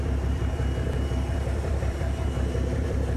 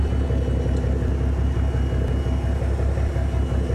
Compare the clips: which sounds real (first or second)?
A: second